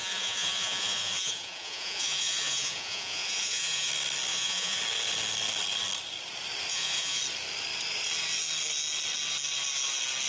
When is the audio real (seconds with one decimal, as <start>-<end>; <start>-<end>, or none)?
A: 3.9-4.3; 4.8-6.7; 7.2-10.3